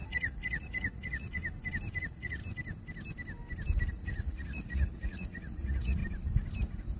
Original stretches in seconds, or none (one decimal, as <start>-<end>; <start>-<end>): 1.4-2.0; 2.4-3.9; 6.0-7.0